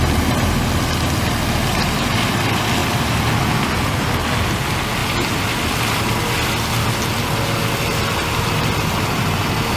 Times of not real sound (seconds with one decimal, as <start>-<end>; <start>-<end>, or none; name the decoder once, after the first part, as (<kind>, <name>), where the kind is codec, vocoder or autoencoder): none